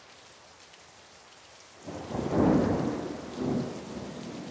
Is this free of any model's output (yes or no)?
yes